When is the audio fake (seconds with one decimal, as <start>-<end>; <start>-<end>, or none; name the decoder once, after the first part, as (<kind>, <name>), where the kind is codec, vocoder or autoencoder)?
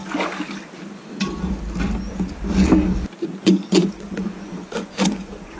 3.4-5.6 (vocoder, Vocos)